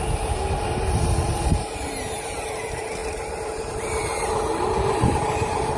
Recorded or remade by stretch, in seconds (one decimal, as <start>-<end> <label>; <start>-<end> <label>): 0.0-0.7 recorded; 0.7-1.4 remade; 1.4-5.8 recorded

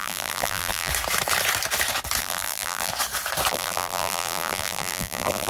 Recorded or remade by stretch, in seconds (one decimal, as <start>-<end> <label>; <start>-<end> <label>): 0.0-0.9 remade; 0.9-2.2 recorded; 2.2-2.9 remade; 2.9-3.5 recorded; 3.5-5.5 remade

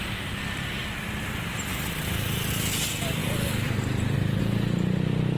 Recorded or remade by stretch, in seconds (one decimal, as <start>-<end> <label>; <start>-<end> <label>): 0.0-3.2 recorded; 3.2-4.4 remade; 4.4-5.4 recorded

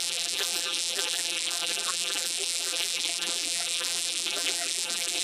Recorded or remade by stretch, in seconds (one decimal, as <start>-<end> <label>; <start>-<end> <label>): 0.0-5.2 remade

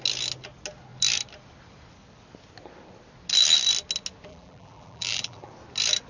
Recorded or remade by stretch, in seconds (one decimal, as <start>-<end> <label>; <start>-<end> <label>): 0.0-4.3 recorded; 4.3-5.5 remade; 5.5-6.1 recorded

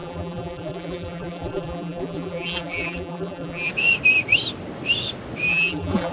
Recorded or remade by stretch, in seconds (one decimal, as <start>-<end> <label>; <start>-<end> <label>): 0.0-3.7 remade; 3.7-5.5 recorded; 5.5-6.1 remade

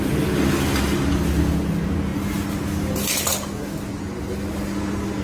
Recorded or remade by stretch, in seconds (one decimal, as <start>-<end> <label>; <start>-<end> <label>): 0.0-5.2 recorded

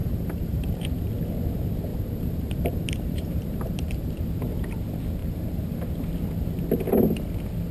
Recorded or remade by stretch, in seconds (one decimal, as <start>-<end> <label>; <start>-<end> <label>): 0.0-1.1 remade; 1.1-1.9 recorded; 1.9-4.1 remade; 4.1-5.2 recorded; 5.2-5.8 remade; 5.8-7.7 recorded